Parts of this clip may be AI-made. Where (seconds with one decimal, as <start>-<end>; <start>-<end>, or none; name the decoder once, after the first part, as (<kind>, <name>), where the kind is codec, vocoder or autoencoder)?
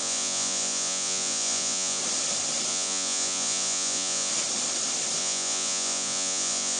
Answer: 0.0-2.0 (vocoder, Vocos); 2.7-4.3; 5.2-6.8